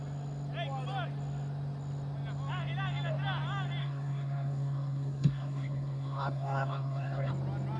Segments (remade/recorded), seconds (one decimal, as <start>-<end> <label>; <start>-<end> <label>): 0.0-3.8 recorded; 3.8-7.3 remade; 7.3-7.8 recorded